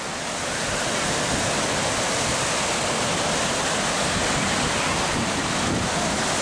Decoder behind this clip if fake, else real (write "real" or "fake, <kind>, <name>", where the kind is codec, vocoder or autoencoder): real